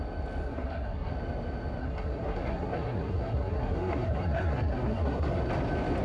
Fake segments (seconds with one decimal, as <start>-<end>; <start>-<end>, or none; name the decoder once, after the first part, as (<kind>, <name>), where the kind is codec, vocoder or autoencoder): 0.4-1.1 (codec, SNAC); 1.8-5.4